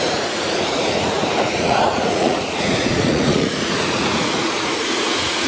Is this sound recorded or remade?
remade